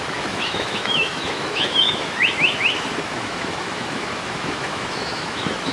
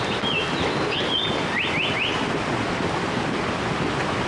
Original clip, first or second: second